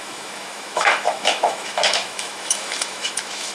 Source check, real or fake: fake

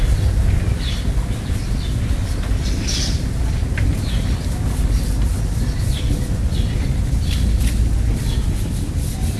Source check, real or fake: real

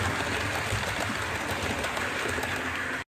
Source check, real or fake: real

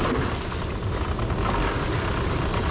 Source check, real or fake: real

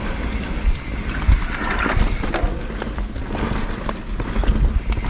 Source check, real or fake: real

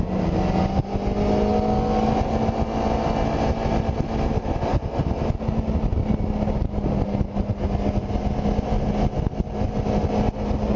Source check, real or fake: real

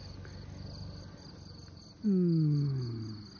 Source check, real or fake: real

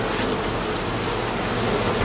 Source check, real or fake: real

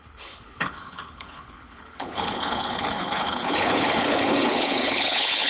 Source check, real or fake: fake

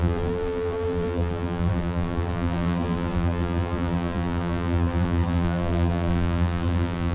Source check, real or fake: fake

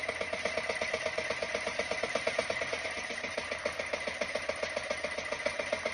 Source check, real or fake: real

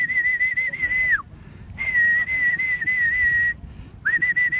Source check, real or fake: real